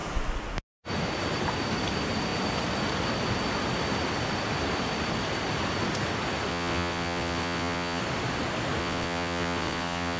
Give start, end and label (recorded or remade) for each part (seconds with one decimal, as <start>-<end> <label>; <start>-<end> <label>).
0.0-6.5 recorded; 6.5-8.0 remade; 8.0-8.8 recorded; 8.8-10.2 remade